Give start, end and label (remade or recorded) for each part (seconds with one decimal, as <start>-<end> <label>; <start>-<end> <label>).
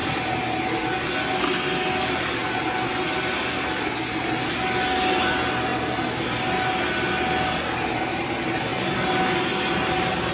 0.0-10.3 recorded